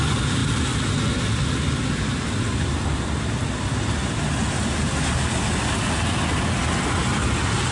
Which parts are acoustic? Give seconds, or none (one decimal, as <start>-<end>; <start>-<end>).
0.0-7.7